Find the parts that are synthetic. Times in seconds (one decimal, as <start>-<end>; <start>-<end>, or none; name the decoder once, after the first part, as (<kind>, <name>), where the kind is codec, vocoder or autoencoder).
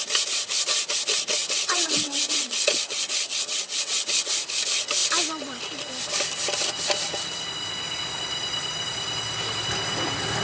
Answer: 1.4-4.3 (vocoder, WaveNeXt)